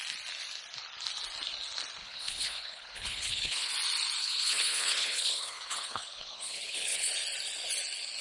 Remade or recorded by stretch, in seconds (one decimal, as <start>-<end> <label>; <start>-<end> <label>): 0.0-2.0 recorded; 2.0-3.7 remade; 3.7-4.2 recorded; 4.2-7.1 remade; 7.1-8.2 recorded